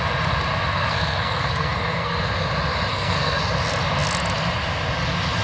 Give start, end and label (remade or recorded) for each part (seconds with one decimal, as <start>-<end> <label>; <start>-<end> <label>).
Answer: 0.0-0.7 recorded; 0.7-2.2 remade; 2.2-2.9 recorded; 2.9-3.4 remade; 3.4-5.4 recorded